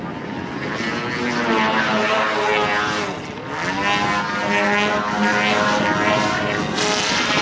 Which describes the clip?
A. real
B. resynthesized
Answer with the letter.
A